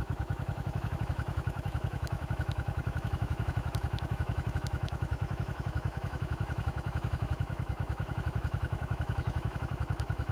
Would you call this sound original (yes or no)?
no